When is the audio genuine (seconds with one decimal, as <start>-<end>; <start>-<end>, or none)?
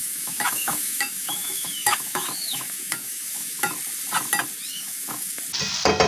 3.7-4.7; 5.4-6.1